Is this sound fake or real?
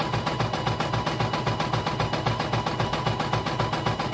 real